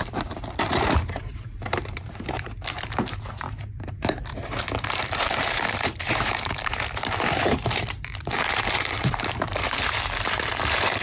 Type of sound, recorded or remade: remade